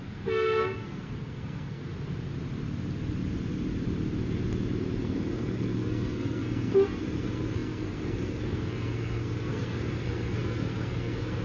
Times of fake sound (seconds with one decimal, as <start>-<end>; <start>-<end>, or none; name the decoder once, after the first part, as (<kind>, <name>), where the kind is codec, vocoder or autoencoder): 0.0-1.8 (codec, SNAC); 5.0-11.4